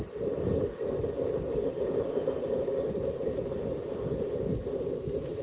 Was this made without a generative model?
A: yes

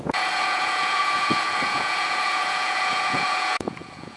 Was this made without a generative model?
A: no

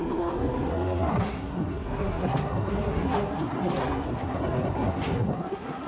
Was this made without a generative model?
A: no